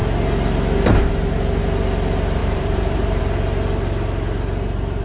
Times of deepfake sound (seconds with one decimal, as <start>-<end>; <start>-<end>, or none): 2.4-3.2